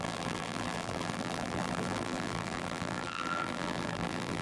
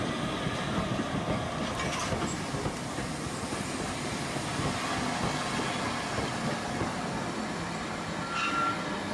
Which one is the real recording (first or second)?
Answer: second